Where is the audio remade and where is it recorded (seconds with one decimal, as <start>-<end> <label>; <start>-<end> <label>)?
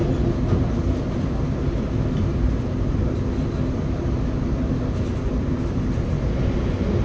0.0-7.0 recorded